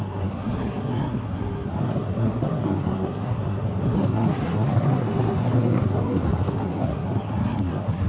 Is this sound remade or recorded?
remade